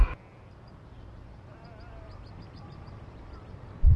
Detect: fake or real real